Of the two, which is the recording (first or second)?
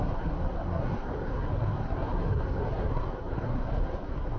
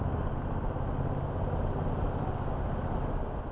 second